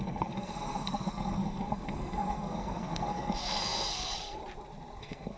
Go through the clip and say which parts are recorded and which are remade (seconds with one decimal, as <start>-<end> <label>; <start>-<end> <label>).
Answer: 0.0-4.4 remade; 4.4-5.0 recorded; 5.0-5.4 remade